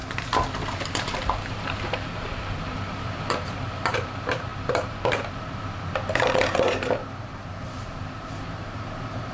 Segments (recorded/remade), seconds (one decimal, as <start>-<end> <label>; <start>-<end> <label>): 0.0-0.9 recorded; 0.9-9.3 remade